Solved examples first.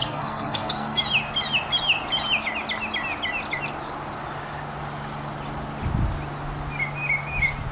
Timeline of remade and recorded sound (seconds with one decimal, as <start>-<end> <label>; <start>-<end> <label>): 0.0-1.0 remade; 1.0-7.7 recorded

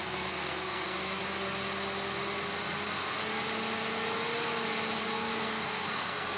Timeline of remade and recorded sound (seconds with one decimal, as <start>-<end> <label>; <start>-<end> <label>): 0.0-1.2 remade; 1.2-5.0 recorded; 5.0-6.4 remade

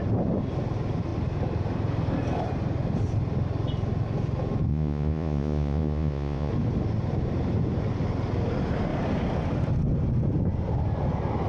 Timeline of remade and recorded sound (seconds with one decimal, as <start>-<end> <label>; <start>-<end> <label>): 0.0-4.7 recorded; 4.7-6.5 remade; 6.5-11.5 recorded